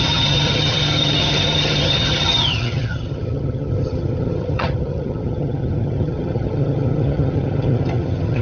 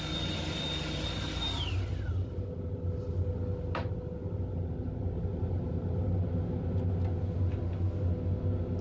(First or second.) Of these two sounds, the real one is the second